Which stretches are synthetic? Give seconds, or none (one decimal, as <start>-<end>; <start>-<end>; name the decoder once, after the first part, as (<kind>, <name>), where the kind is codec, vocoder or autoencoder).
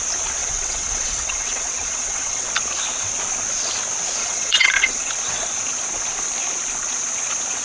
0.4-2.5 (vocoder, WaveNeXt); 4.2-5.1